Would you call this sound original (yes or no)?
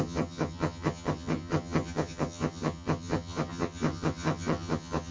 no